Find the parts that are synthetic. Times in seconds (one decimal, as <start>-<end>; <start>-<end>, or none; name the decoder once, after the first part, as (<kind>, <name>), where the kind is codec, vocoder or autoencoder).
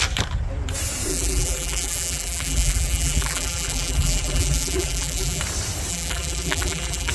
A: 1.1-5.4 (vocoder, BigVGAN v2); 5.9-7.1